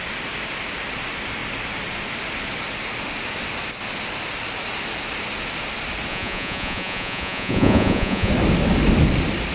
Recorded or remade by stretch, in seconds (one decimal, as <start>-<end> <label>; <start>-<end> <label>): 0.0-6.1 recorded; 6.1-8.3 remade; 8.3-9.5 recorded